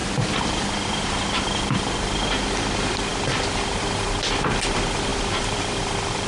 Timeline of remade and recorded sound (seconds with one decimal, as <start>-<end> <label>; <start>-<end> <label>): 0.0-1.4 remade; 1.4-5.1 recorded; 5.1-5.8 remade; 5.8-6.3 recorded